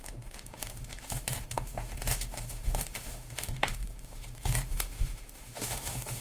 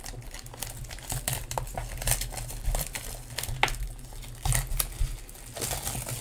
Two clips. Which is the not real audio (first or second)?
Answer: first